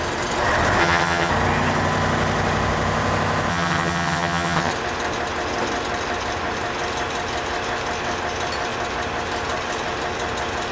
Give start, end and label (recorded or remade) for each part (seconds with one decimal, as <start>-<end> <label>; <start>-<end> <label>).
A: 0.0-0.8 recorded; 0.8-1.3 remade; 1.3-3.5 recorded; 3.5-4.7 remade; 4.7-10.7 recorded